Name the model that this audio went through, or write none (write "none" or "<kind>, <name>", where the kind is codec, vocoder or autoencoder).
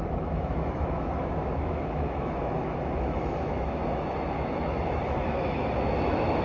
autoencoder, DAC-VAE